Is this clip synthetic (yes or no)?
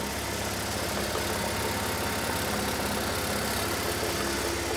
no